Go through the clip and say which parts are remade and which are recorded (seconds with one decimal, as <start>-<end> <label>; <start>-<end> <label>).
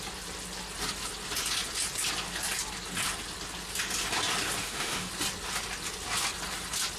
0.0-4.6 recorded; 4.6-5.1 remade; 5.1-7.0 recorded